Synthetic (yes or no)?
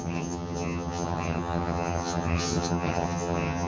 yes